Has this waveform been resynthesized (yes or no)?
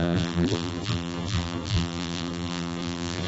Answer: yes